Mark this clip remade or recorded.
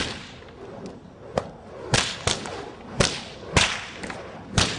recorded